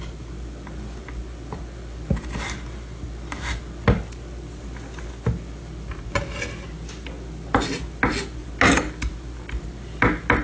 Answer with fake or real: real